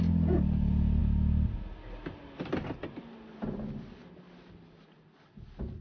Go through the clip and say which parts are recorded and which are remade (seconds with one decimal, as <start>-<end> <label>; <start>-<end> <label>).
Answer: 0.0-5.8 recorded